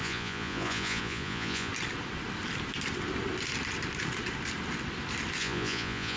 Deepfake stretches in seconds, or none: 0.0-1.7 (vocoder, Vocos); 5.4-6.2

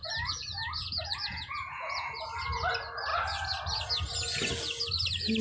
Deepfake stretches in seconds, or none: 0.0-2.3 (vocoder, Vocos)